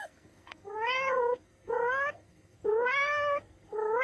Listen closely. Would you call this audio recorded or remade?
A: remade